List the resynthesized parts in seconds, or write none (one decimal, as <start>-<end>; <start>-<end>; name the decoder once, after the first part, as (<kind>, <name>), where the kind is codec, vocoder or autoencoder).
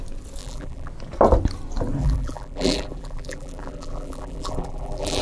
0.4-0.9 (vocoder, BigVGAN v2); 2.0-5.2